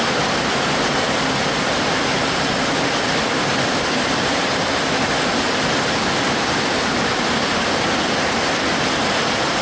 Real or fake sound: fake